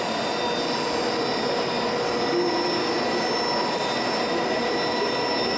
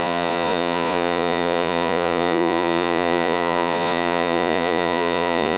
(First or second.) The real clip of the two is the first